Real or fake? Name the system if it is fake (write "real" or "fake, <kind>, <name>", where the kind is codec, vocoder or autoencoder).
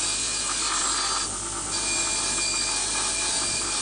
real